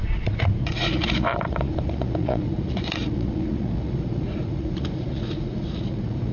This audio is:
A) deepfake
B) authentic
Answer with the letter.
A